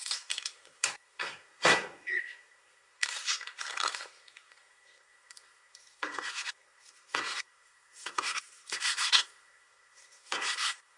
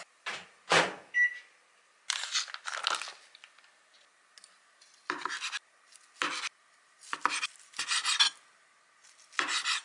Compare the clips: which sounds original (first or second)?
second